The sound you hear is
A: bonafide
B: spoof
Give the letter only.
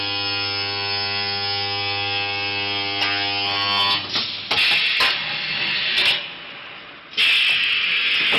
A